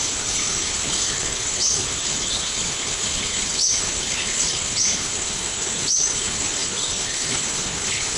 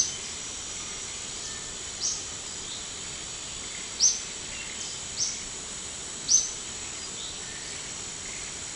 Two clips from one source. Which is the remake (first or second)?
first